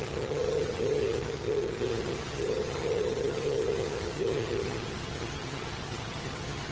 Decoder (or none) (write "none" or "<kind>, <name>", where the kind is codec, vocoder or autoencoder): vocoder, HiFi-GAN